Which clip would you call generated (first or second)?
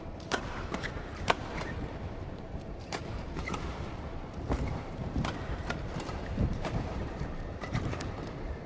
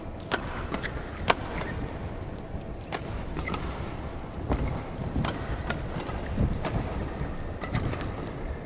first